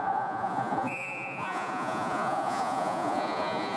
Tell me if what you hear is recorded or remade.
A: remade